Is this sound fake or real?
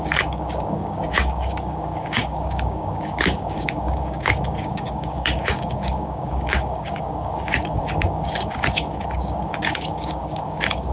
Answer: fake